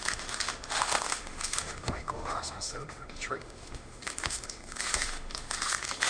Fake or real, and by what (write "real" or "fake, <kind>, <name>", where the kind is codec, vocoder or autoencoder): fake, autoencoder, DAC-VAE